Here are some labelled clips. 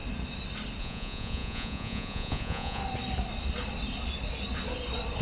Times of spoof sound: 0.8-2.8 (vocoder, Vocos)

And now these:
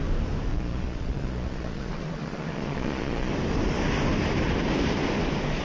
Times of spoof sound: 0.5-3.3 (vocoder, Vocos)

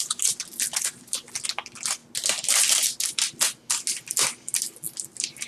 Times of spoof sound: none

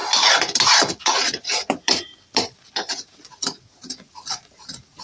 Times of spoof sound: 1.0-2.1 (vocoder, Vocos); 2.9-5.0

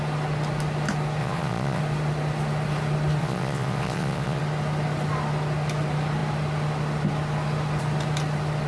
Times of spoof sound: 1.2-1.8 (vocoder, Vocos); 3.2-4.4